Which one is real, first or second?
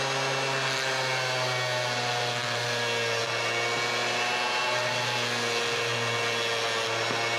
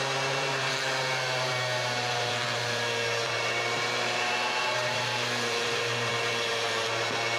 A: first